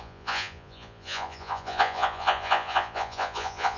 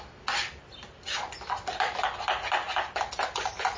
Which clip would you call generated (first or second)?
first